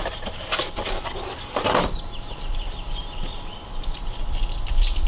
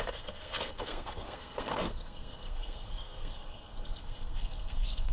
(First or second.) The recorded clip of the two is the first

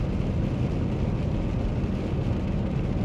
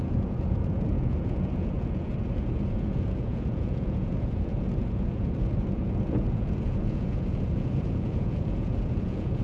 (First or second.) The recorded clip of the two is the first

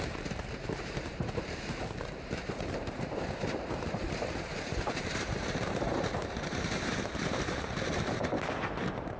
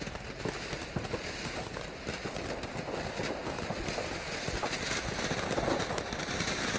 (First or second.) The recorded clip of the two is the second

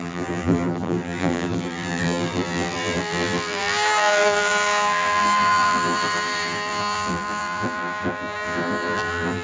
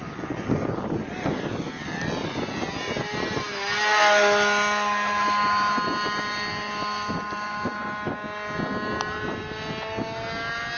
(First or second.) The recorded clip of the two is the second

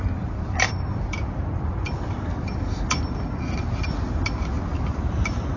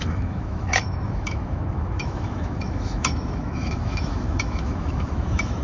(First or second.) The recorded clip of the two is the first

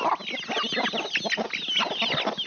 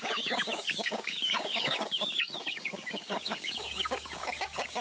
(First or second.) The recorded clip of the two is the first